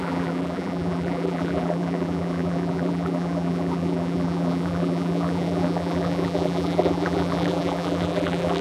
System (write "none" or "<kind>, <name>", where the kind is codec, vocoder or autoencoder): vocoder, BigVGAN v2